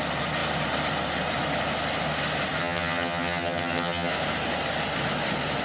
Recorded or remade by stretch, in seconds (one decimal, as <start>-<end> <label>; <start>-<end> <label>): 0.0-2.6 recorded; 2.6-4.1 remade; 4.1-5.6 recorded